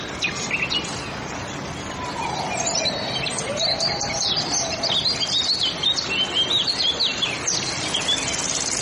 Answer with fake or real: real